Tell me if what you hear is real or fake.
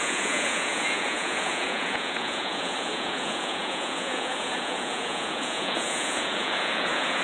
fake